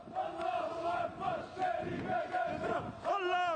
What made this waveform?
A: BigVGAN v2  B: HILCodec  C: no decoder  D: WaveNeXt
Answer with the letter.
C